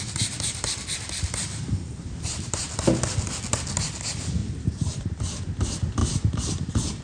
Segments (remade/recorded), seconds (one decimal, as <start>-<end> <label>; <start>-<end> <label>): 0.0-1.4 recorded; 1.4-2.7 remade; 2.7-4.4 recorded; 4.4-5.2 remade; 5.2-6.0 recorded; 6.0-7.0 remade